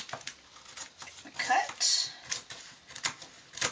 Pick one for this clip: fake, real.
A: real